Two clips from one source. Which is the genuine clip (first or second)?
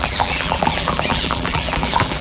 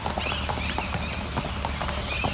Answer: second